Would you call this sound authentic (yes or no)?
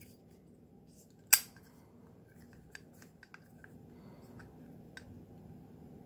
yes